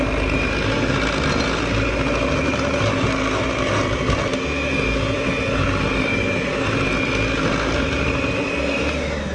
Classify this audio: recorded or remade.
recorded